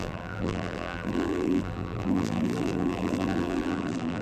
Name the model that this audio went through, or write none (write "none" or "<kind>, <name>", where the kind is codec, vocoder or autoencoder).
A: vocoder, BigVGAN v2